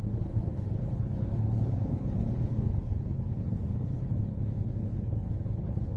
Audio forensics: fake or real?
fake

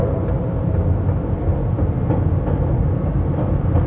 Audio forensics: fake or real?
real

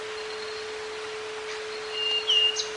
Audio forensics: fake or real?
real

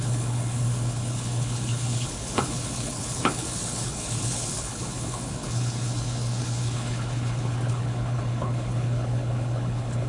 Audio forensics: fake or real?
fake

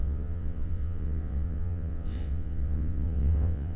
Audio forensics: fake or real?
fake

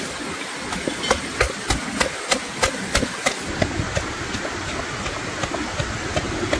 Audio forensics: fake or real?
real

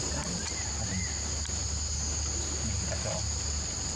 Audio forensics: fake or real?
fake